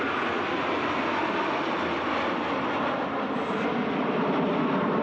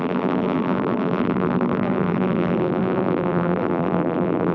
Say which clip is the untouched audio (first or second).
first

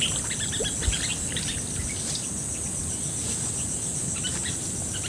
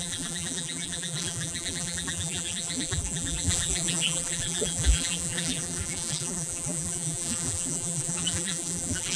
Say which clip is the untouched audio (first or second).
first